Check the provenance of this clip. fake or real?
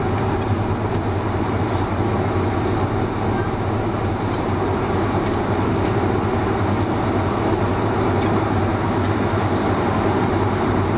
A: real